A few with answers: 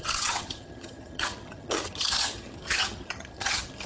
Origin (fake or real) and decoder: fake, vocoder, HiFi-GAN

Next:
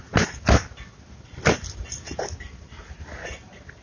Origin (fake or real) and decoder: real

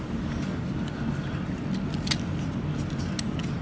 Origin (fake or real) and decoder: real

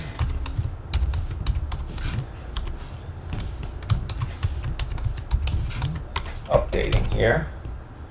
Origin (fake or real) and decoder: real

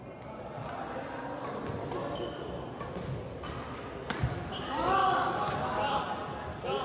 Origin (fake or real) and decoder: real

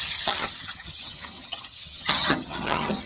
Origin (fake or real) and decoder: fake, vocoder, HiFi-GAN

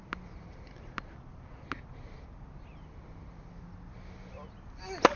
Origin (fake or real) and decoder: real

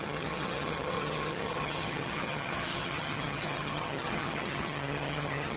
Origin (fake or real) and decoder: fake, vocoder, HiFi-GAN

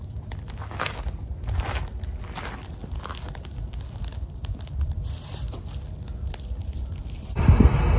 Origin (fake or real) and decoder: real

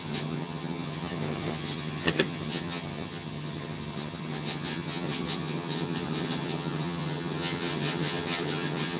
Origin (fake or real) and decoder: fake, vocoder, HiFi-GAN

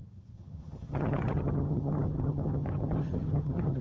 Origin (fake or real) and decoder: fake, vocoder, HiFi-GAN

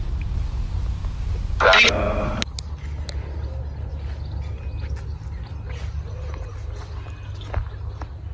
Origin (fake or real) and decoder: real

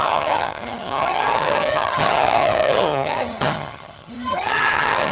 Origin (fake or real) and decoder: fake, vocoder, HiFi-GAN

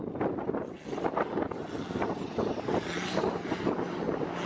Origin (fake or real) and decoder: real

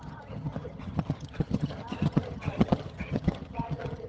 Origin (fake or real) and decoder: fake, vocoder, HiFi-GAN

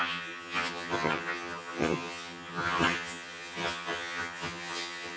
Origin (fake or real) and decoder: fake, vocoder, HiFi-GAN